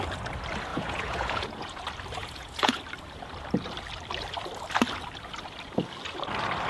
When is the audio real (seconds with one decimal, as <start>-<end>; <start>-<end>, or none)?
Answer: 0.0-0.7; 1.8-2.2; 2.8-6.7